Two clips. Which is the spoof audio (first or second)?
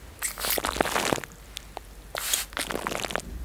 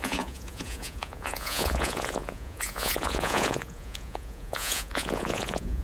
second